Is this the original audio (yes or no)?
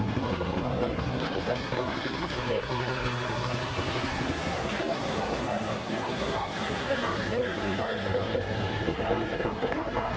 no